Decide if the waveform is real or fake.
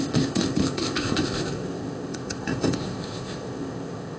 fake